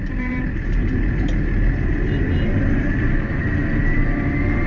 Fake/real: fake